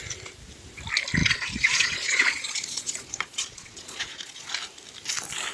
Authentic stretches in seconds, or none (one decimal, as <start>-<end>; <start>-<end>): 0.0-1.2; 4.5-5.5